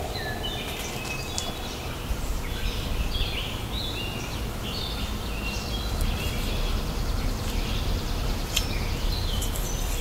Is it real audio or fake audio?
real